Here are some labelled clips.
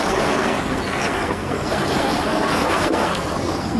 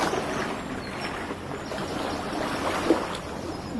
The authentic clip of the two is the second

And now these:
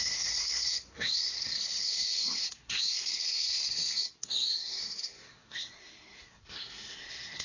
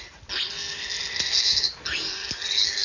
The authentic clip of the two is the second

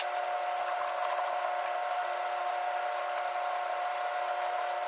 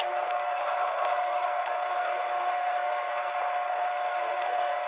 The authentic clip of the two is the first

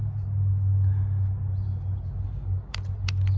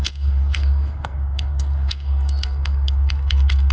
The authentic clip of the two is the first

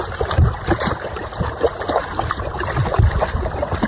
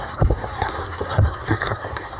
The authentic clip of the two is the first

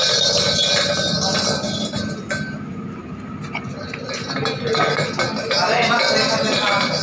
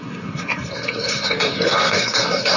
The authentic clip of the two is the first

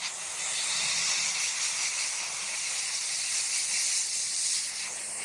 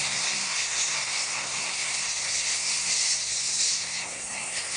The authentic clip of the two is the first